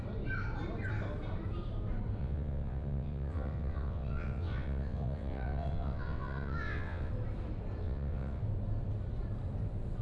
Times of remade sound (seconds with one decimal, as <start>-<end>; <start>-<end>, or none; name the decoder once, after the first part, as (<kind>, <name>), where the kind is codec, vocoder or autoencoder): 2.2-7.1 (vocoder, WaveNeXt); 7.8-8.4